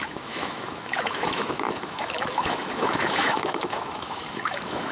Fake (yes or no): yes